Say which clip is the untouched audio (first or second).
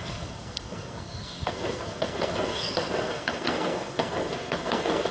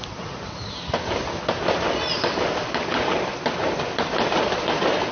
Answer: second